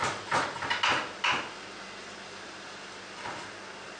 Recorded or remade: recorded